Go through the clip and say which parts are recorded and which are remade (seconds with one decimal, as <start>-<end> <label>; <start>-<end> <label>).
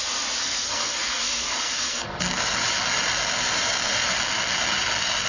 0.0-0.4 recorded; 0.4-2.4 remade; 2.4-5.3 recorded